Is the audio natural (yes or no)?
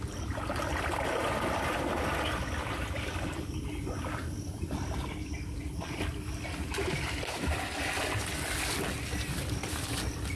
yes